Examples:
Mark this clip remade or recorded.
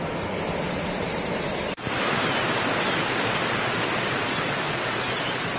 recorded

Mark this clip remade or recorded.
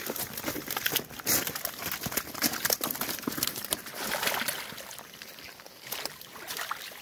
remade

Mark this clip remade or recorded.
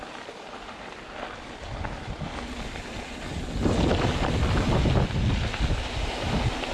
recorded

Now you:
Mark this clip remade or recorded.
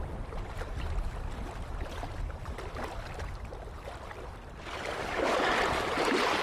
remade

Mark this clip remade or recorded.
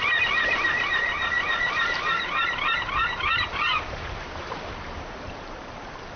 remade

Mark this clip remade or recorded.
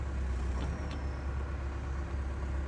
recorded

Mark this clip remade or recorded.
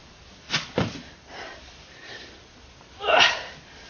remade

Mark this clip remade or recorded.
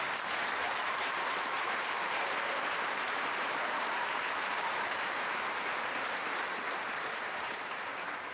remade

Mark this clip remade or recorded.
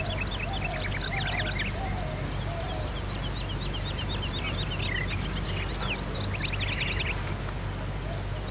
recorded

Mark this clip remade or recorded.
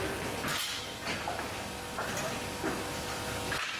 recorded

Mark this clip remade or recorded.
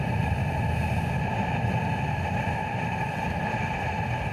remade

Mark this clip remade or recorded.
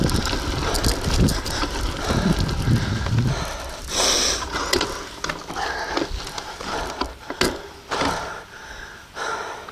recorded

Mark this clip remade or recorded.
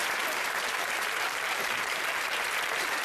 remade